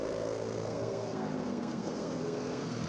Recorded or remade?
remade